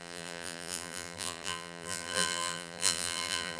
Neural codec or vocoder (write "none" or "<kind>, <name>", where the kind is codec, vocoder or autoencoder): vocoder, BigVGAN v2